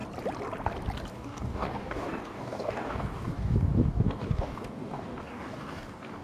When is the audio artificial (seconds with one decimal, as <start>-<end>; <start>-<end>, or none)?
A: 1.1-6.2